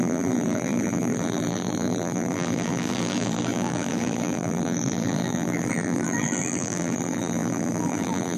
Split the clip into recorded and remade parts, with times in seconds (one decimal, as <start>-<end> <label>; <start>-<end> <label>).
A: 0.0-8.4 remade